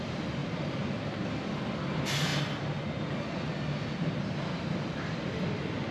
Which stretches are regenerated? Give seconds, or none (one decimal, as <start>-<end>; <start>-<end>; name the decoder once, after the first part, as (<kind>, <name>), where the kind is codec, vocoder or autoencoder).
none